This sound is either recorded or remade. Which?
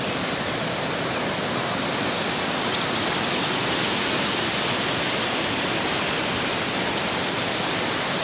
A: recorded